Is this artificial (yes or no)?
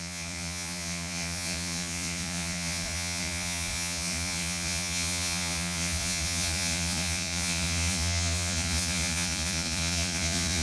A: yes